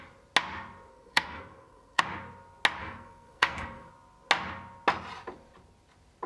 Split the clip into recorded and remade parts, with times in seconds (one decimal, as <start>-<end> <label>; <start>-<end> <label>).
0.0-0.9 recorded; 0.9-2.0 remade; 2.0-2.8 recorded; 2.8-3.9 remade; 3.9-6.3 recorded